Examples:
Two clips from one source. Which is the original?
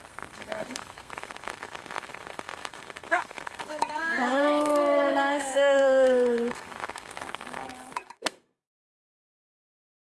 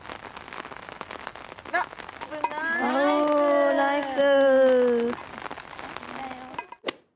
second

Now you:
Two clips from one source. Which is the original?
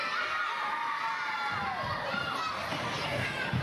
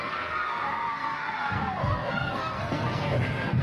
first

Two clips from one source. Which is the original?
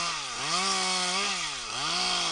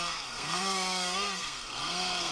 first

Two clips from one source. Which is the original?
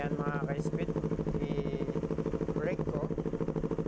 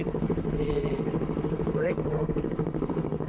first